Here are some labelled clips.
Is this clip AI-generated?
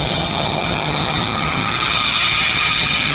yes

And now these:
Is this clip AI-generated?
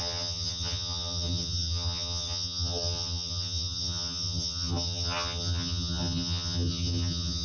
yes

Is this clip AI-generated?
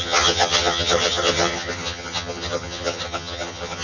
yes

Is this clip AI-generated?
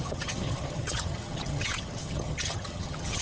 yes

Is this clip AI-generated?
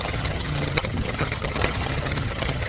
yes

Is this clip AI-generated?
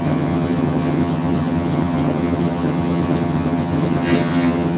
yes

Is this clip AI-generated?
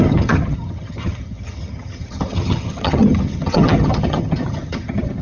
yes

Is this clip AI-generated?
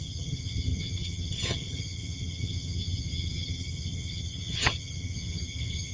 yes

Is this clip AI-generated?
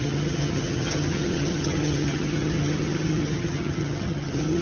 yes